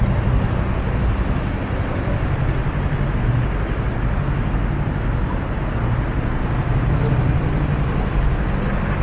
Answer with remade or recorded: recorded